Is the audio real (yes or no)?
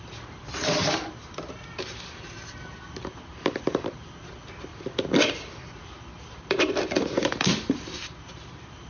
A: no